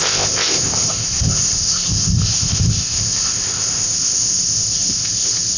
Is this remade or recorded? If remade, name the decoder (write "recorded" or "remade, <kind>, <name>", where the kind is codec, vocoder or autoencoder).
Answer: remade, codec, ZipCodec